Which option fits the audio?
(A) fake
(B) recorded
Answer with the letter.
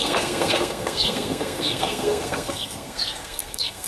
A